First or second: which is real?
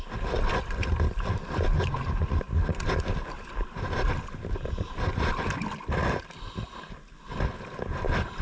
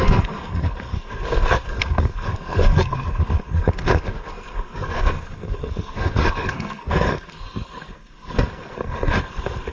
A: first